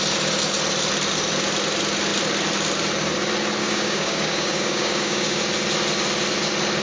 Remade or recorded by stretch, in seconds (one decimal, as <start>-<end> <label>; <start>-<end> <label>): 0.0-3.6 recorded; 3.6-5.4 remade; 5.4-6.8 recorded